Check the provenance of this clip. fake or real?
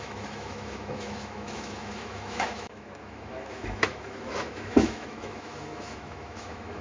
fake